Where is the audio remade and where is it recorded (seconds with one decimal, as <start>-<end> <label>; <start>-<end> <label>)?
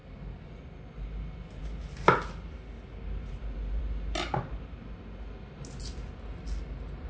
0.0-7.1 recorded